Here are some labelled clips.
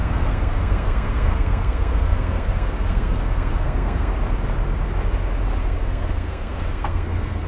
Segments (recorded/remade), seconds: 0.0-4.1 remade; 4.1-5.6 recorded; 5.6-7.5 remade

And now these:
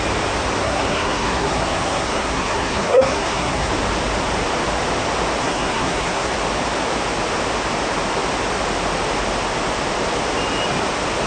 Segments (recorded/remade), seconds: 0.0-0.6 recorded; 0.6-3.7 remade; 3.7-5.4 recorded; 5.4-6.3 remade; 6.3-11.3 recorded

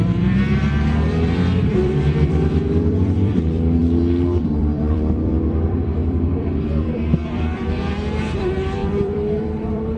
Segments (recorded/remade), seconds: 0.0-3.8 remade; 3.8-4.6 recorded; 4.6-10.0 remade

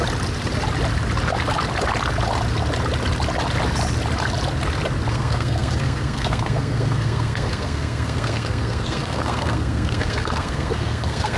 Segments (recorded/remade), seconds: 0.0-5.1 recorded; 5.1-11.4 remade

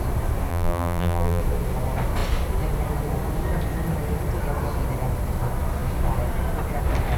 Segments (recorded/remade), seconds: 0.0-0.5 recorded; 0.5-1.4 remade; 1.4-7.2 recorded

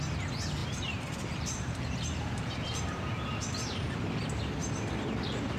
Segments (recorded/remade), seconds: 0.0-0.6 recorded; 0.6-4.0 remade; 4.0-5.6 recorded

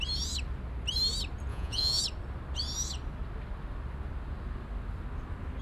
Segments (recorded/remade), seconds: 0.0-1.5 recorded; 1.5-2.0 remade; 2.0-5.6 recorded

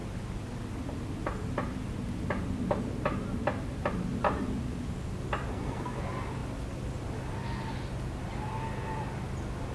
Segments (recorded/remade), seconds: 0.0-5.5 recorded; 5.5-6.0 remade; 6.0-9.7 recorded